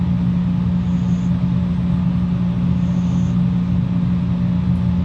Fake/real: real